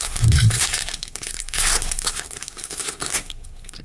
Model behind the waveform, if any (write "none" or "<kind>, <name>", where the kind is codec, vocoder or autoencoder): codec, SNAC